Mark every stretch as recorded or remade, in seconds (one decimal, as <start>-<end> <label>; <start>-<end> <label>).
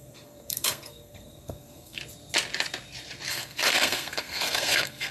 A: 0.0-2.0 remade; 2.0-3.3 recorded; 3.3-5.1 remade